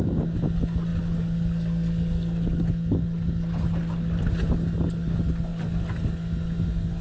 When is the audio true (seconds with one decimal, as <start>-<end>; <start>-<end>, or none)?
0.0-7.0